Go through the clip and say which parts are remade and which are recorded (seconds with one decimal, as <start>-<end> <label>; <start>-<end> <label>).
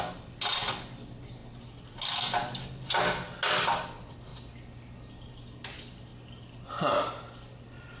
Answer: 0.0-8.0 recorded